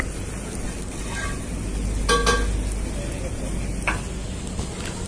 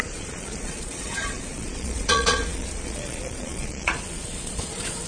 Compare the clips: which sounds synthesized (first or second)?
second